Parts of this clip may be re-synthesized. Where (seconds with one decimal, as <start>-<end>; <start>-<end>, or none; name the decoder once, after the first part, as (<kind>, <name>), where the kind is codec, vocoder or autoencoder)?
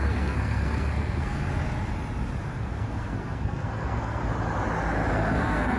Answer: 0.0-1.5 (codec, SNAC); 2.5-4.2; 5.1-5.8